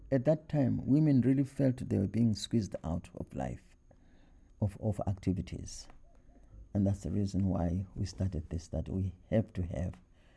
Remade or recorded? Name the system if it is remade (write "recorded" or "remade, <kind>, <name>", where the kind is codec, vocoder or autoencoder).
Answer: recorded